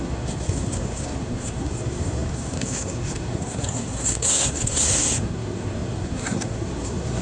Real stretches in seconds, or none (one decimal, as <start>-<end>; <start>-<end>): none